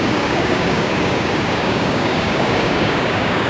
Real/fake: fake